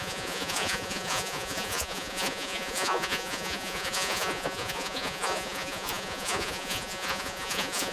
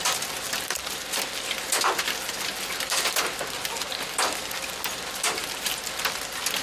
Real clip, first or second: second